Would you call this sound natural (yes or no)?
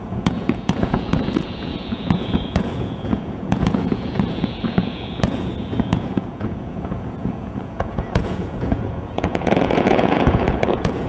no